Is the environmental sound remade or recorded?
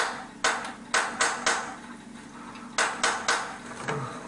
recorded